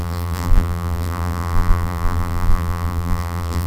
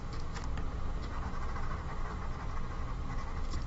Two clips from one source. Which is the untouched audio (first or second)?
second